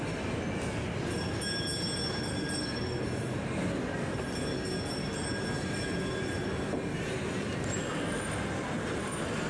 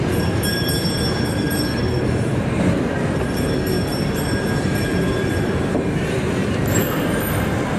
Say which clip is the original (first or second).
first